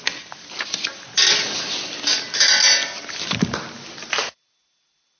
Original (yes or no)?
yes